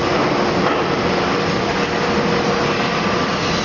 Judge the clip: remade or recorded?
recorded